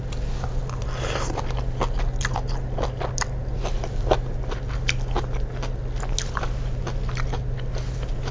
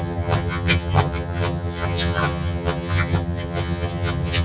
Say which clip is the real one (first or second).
first